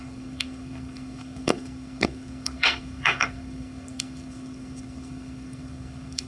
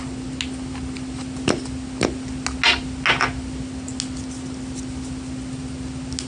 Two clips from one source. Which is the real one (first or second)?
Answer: second